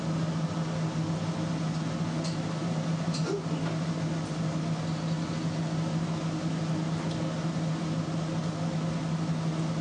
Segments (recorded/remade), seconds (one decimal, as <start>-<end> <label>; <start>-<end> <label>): 0.0-2.6 recorded; 2.6-3.2 remade; 3.2-9.8 recorded